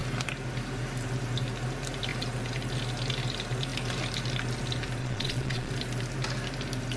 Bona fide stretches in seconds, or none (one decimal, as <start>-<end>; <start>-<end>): 0.0-5.0; 5.7-7.0